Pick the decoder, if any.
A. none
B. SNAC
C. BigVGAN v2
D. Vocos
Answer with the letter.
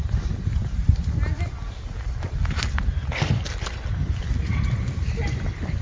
A